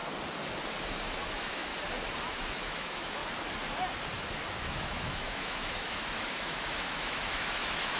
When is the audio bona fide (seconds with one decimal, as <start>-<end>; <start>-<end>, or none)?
0.0-1.2; 1.7-2.3; 3.2-4.6